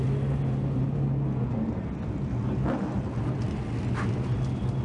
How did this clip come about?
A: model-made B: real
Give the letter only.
B